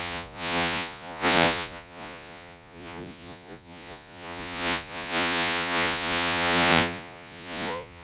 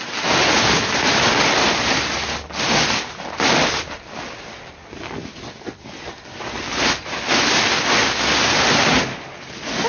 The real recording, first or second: second